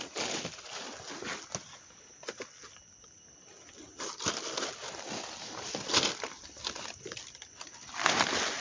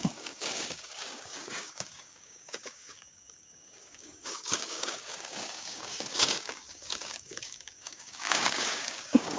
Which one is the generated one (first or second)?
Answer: second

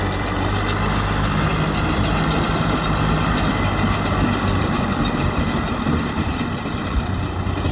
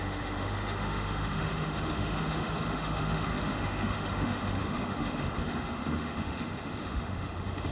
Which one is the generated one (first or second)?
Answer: second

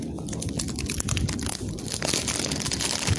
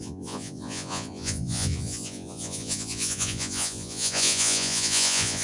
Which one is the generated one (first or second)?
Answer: second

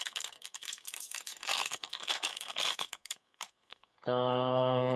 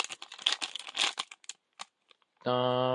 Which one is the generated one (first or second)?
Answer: first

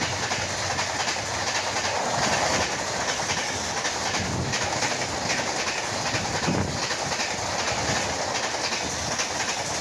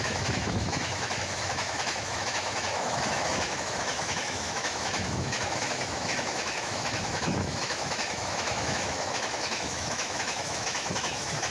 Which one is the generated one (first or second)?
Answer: second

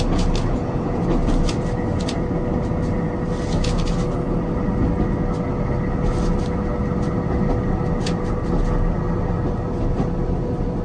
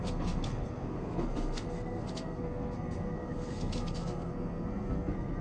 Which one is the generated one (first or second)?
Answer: second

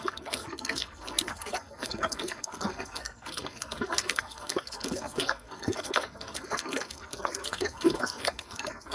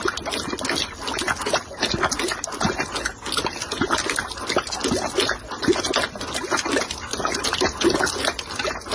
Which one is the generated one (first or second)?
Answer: first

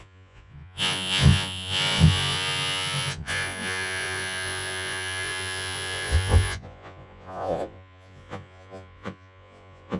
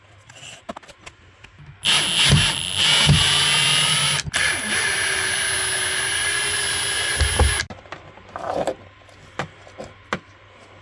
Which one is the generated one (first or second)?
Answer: first